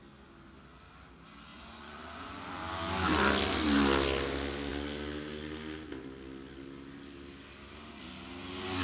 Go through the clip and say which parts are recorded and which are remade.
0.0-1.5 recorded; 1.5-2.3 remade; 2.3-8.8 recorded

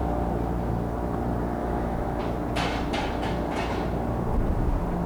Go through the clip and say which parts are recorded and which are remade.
0.0-1.6 recorded; 1.6-2.2 remade; 2.2-5.0 recorded

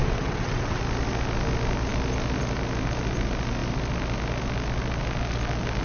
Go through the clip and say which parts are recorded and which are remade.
0.0-0.8 remade; 0.8-5.8 recorded